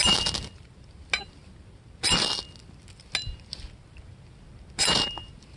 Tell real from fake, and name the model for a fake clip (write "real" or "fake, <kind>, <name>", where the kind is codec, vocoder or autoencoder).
real